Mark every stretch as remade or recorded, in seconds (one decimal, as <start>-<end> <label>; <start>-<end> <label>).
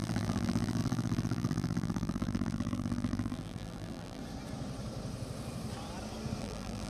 0.0-4.2 remade; 4.2-6.4 recorded; 6.4-6.9 remade